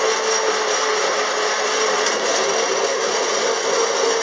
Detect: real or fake real